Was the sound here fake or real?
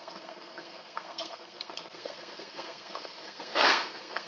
fake